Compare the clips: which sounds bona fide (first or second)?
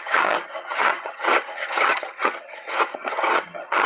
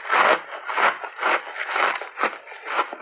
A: second